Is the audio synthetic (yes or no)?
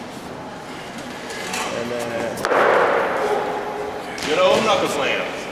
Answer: no